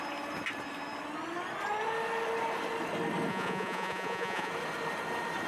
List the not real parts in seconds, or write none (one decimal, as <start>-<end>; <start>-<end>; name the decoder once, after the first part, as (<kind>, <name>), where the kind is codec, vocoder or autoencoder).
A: 3.3-4.5 (vocoder, Vocos)